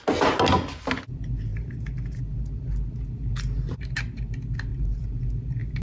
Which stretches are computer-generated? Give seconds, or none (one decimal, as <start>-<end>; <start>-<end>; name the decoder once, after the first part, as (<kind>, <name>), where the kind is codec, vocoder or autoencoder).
1.5-2.2 (vocoder, BigVGAN v2); 4.7-5.8